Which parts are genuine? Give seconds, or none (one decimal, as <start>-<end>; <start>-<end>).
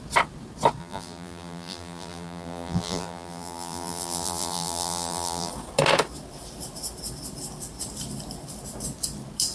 0.0-0.8; 5.5-9.5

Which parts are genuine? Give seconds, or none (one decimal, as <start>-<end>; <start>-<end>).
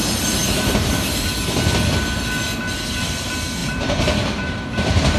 0.0-0.4; 1.3-3.6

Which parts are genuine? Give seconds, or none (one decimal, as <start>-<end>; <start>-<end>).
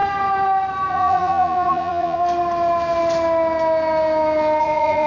0.0-0.9; 2.2-4.6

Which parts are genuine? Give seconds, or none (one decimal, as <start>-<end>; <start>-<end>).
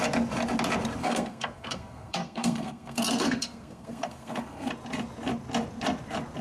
0.0-1.0; 4.7-6.4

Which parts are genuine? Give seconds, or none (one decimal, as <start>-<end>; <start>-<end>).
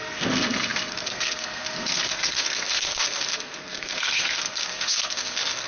none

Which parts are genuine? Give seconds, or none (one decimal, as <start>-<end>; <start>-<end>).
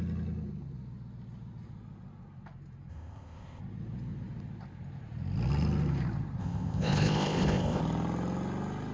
0.0-2.9; 3.6-6.4; 7.8-8.9